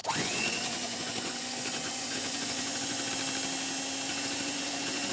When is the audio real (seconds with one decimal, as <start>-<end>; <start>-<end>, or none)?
3.1-4.1